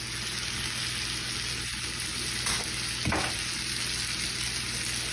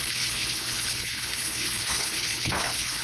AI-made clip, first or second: second